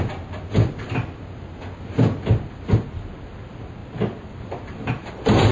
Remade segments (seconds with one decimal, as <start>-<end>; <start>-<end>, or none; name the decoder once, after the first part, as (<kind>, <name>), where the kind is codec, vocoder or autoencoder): none